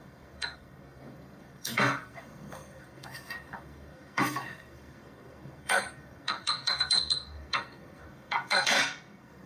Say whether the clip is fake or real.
fake